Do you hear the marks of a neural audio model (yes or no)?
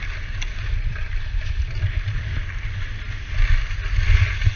no